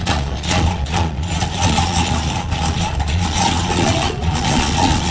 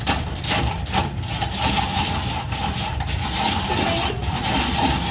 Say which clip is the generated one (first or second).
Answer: first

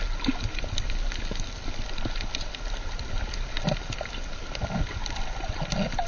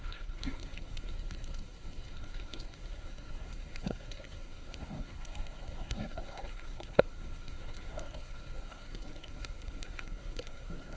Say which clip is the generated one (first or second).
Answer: second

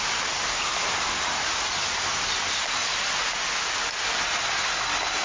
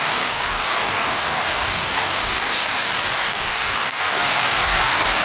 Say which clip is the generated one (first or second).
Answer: second